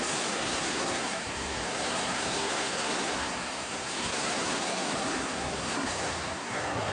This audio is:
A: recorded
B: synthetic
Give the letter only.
B